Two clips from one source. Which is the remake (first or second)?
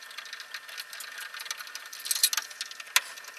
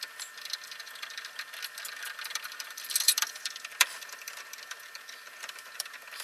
second